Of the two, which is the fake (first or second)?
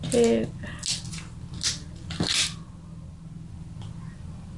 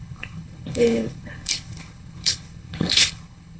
second